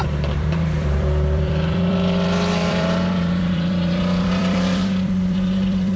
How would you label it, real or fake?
fake